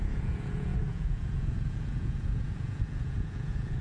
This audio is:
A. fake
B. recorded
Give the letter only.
A